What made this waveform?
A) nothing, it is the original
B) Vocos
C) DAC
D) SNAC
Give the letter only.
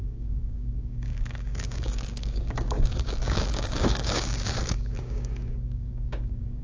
C